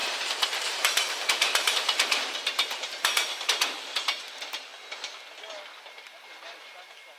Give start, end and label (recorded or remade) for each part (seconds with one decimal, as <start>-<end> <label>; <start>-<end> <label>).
0.0-0.6 recorded; 0.6-4.7 remade; 4.7-6.0 recorded; 6.0-7.2 remade